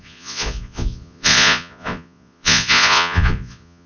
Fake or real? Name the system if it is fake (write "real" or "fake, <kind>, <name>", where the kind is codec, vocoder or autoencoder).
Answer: fake, vocoder, Vocos